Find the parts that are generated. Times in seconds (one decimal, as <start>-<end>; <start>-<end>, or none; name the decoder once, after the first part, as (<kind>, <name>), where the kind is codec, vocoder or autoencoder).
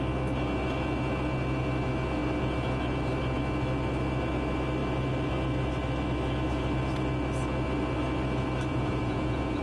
8.7-9.6 (vocoder, Vocos)